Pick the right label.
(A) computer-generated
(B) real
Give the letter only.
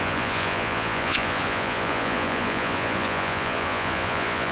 A